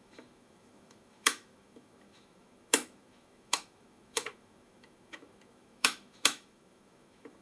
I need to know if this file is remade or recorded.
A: remade